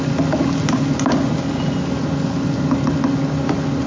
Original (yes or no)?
yes